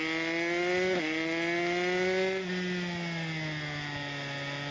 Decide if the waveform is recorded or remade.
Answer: recorded